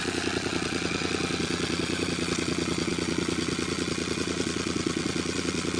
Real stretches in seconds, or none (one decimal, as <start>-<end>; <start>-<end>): none